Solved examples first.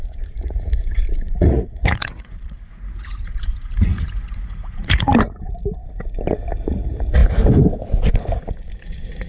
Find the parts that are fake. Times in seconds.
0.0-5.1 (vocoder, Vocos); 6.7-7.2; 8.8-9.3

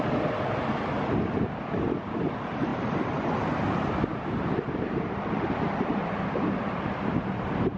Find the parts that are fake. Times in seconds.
0.0-7.8 (vocoder, BigVGAN v2)